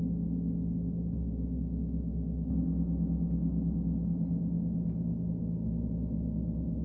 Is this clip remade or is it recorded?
recorded